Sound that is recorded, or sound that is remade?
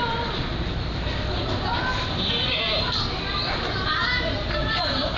recorded